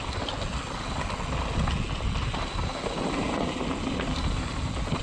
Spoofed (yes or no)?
no